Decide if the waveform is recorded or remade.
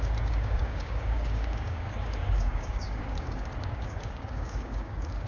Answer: remade